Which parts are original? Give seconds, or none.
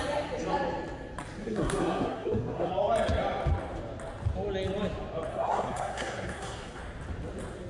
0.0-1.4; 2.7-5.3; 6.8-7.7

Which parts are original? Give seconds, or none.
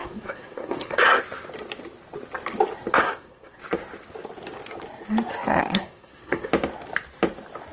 1.2-3.0; 3.6-5.6; 6.5-7.7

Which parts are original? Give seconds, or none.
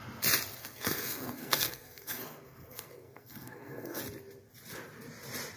0.0-0.6; 4.0-5.6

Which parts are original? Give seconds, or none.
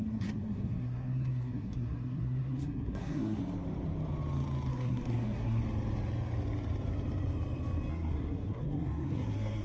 3.4-4.7; 5.6-7.9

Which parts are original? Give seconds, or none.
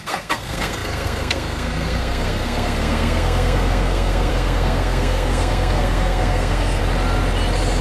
6.8-7.8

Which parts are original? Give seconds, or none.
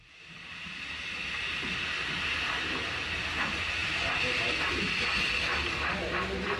0.0-6.6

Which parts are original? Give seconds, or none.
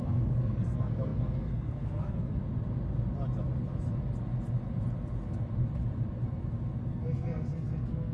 2.4-6.9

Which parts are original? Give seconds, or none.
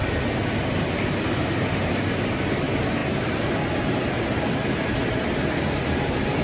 0.0-6.4